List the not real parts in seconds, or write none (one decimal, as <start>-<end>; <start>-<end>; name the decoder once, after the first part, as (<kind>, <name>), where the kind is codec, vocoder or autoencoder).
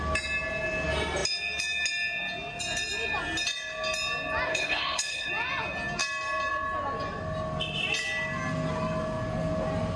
4.5-5.3 (codec, HILCodec)